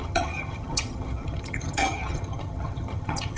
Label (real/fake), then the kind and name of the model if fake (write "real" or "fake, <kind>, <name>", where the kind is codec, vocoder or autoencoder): fake, vocoder, HiFi-GAN